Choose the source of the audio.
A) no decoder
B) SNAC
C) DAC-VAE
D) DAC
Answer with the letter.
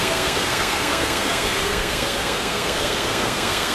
B